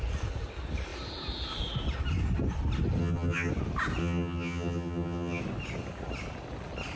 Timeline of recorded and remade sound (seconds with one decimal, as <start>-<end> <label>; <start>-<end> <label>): 0.0-3.0 recorded; 3.0-3.5 remade; 3.5-4.0 recorded; 4.0-5.4 remade; 5.4-7.0 recorded